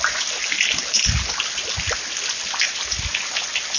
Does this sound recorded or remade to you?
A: recorded